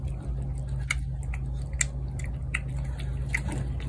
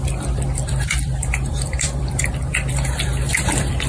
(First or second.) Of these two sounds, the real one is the first